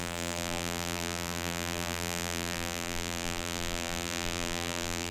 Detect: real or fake fake